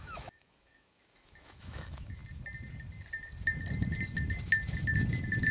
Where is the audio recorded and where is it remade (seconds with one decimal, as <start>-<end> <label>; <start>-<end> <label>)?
0.0-2.2 remade; 2.2-5.5 recorded

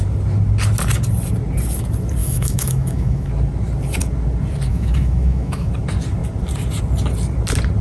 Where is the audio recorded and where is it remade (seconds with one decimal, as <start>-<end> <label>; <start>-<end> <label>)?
0.0-2.2 recorded; 2.2-3.3 remade; 3.3-4.7 recorded; 4.7-5.7 remade; 5.7-7.8 recorded

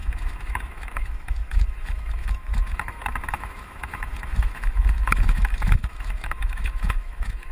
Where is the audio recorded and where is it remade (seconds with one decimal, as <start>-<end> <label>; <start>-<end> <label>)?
0.0-7.5 remade